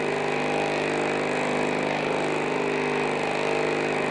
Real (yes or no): yes